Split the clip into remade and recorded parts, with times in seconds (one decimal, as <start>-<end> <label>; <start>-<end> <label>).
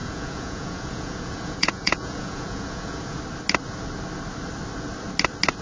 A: 0.0-3.2 remade; 3.2-5.6 recorded